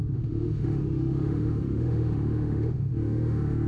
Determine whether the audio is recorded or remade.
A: remade